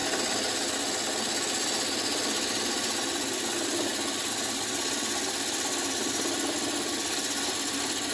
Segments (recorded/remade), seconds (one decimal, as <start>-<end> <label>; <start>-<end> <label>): 0.0-8.1 recorded